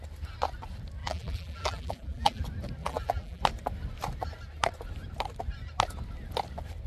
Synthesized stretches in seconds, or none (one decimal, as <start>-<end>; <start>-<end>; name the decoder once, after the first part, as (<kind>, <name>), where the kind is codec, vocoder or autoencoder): 1.0-2.4 (vocoder, BigVGAN v2); 2.8-3.4